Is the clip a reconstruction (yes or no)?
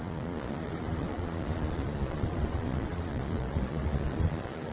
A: yes